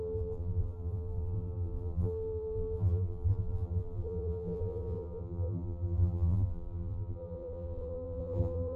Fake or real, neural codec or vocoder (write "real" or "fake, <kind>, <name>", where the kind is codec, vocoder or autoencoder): fake, vocoder, BigVGAN v2